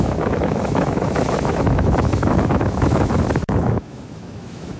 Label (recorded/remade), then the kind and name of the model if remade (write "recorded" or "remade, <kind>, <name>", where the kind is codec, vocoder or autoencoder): remade, autoencoder, DAC-VAE